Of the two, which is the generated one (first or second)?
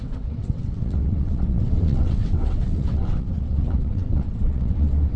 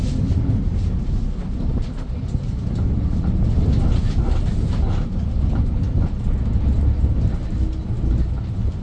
first